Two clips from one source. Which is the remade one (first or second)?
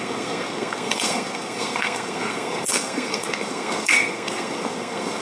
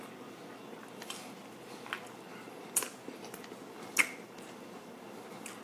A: first